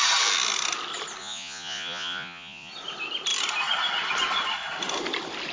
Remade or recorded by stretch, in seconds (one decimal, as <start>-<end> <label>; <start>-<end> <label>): 0.0-1.2 recorded; 1.2-2.7 remade; 2.7-5.5 recorded